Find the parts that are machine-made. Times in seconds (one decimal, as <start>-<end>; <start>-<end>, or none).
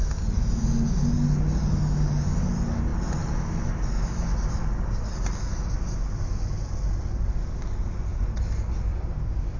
none